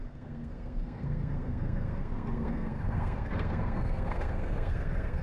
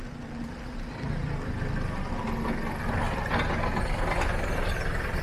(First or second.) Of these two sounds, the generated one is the first